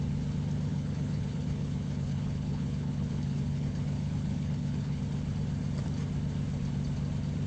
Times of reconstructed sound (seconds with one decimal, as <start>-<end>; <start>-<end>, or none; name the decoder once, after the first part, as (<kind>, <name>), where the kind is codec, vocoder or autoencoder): 0.7-5.0 (codec, HILCodec)